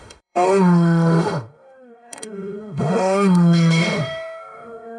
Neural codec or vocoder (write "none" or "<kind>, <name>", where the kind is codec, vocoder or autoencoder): autoencoder, DAC-VAE